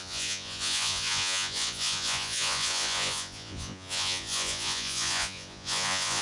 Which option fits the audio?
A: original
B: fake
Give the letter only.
B